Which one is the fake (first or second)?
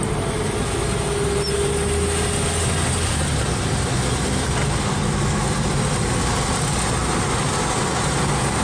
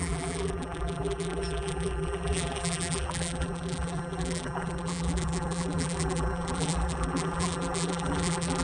second